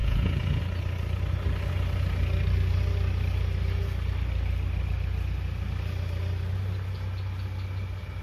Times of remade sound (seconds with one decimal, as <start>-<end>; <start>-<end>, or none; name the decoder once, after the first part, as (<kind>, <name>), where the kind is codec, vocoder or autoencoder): 0.0-0.6 (vocoder, Vocos)